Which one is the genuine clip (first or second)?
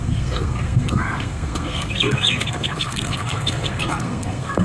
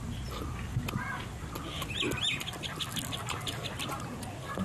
second